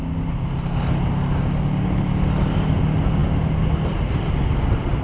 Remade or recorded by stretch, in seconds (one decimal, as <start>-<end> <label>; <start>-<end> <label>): 0.0-5.0 recorded